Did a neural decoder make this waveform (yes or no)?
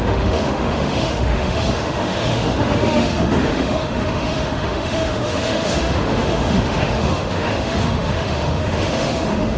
yes